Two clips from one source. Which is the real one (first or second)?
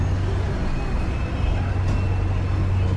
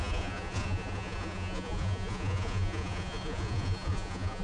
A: first